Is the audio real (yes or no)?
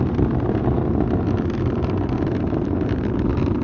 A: yes